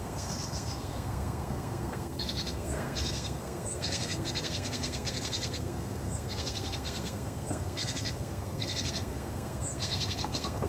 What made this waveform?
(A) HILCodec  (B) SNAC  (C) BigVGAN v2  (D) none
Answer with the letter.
B